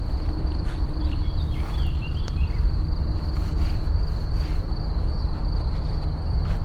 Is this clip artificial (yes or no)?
yes